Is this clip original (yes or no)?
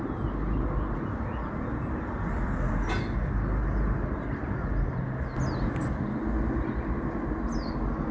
yes